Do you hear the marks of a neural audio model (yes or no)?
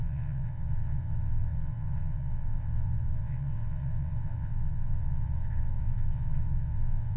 yes